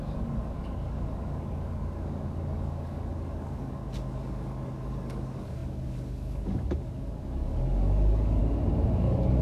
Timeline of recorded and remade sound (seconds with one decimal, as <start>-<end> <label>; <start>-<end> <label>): 0.0-8.4 remade; 8.4-9.0 recorded; 9.0-9.4 remade